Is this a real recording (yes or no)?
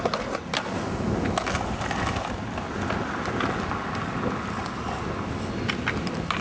yes